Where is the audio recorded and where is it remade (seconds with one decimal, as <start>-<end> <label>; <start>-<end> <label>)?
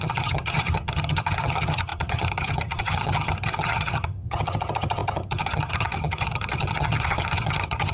0.0-7.9 remade